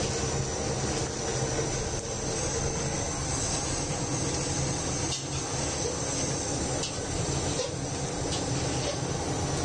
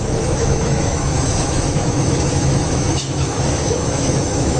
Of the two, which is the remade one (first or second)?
second